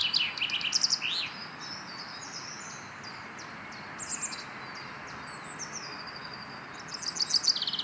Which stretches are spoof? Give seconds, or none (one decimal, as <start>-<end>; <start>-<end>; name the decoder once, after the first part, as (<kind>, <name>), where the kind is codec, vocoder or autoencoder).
none